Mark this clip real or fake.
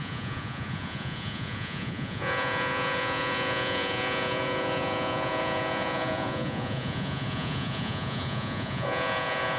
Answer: fake